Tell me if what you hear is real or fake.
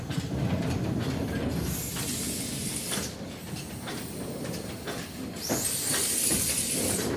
real